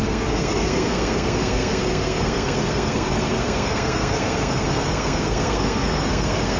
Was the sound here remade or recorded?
remade